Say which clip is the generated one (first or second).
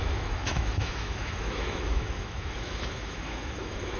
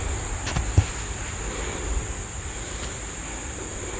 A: first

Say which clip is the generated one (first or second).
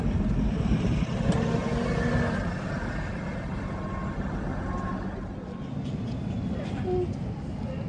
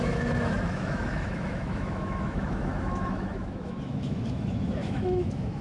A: second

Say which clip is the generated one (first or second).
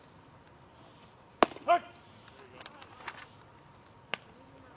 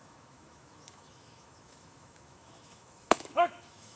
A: second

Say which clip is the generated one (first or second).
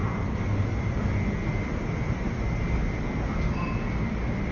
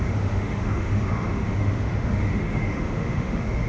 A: second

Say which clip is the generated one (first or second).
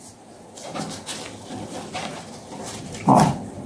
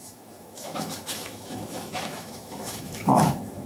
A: second